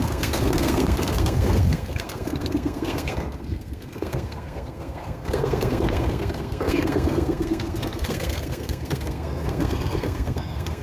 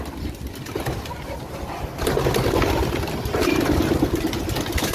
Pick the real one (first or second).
second